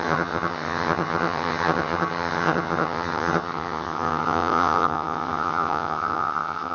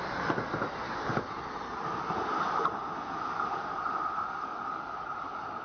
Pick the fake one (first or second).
first